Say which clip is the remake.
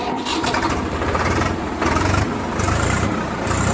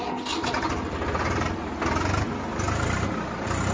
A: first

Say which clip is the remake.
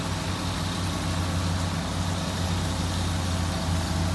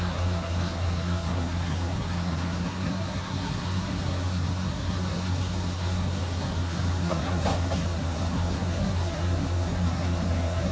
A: second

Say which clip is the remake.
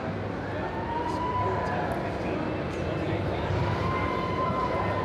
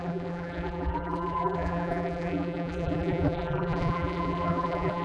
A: second